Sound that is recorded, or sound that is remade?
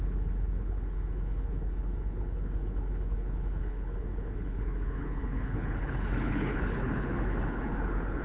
remade